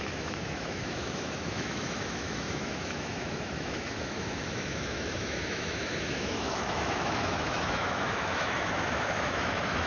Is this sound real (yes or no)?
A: no